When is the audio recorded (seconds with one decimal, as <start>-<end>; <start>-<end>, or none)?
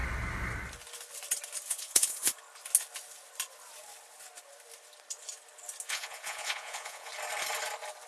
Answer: 0.0-1.7; 2.3-5.9; 7.1-8.1